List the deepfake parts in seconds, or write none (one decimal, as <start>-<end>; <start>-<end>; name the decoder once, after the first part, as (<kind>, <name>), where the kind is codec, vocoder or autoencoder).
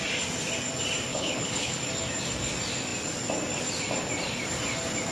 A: 1.1-1.8 (codec, HILCodec)